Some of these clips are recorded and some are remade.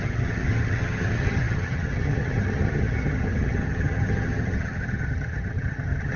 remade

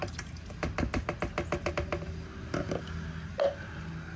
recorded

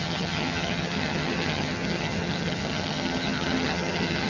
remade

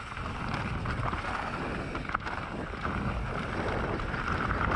recorded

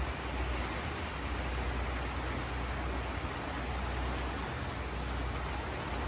recorded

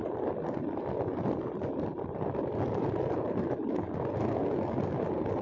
recorded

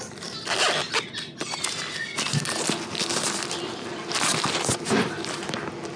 remade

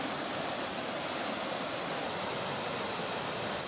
recorded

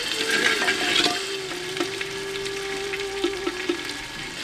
recorded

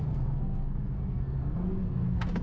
remade